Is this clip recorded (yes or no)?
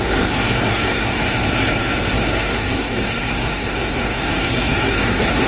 no